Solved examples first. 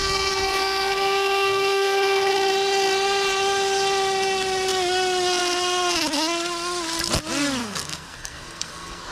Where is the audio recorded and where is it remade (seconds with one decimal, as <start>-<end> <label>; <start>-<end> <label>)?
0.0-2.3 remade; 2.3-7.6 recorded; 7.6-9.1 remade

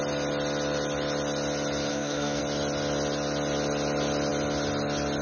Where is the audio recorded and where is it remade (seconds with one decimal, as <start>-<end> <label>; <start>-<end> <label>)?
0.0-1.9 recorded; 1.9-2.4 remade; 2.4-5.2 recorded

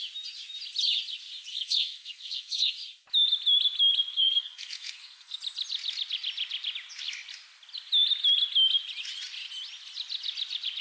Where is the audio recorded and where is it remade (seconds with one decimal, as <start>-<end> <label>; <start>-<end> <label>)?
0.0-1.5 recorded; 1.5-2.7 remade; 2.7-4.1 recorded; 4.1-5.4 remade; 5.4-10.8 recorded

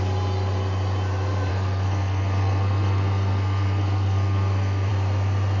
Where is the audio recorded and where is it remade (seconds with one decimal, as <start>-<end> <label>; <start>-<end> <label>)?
0.0-1.5 recorded; 1.5-4.9 remade; 4.9-5.6 recorded

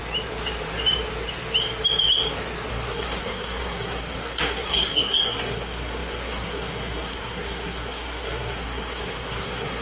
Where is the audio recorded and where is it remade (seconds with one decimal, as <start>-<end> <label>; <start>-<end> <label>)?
0.0-2.7 recorded; 2.7-9.8 remade

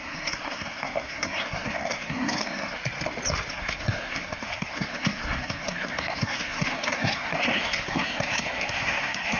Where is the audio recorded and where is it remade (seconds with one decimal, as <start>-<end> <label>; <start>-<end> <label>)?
0.0-2.8 remade; 2.8-3.5 recorded; 3.5-9.4 remade

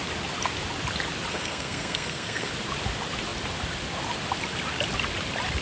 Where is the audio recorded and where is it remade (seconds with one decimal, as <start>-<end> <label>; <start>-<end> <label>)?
0.0-1.3 recorded; 1.3-2.5 remade; 2.5-5.6 recorded

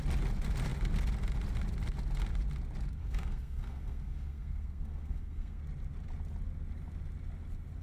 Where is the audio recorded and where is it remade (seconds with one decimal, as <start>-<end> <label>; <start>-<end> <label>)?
0.0-3.0 recorded; 3.0-5.6 remade; 5.6-7.8 recorded